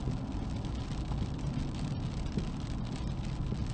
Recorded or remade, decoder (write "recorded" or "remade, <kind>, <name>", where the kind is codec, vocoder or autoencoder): remade, vocoder, BigVGAN v2